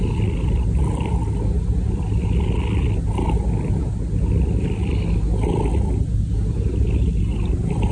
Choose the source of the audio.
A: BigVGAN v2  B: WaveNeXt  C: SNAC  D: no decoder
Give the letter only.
D